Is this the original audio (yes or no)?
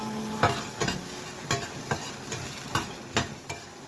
yes